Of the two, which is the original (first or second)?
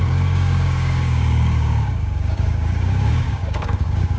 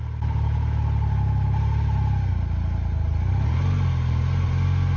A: second